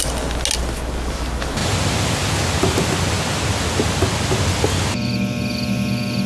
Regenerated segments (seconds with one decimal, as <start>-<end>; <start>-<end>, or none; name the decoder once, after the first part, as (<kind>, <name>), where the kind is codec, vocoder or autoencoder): none